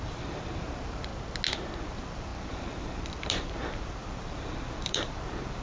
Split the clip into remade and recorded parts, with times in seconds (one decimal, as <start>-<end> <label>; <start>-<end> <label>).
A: 0.0-1.1 remade; 1.1-1.8 recorded; 1.8-5.6 remade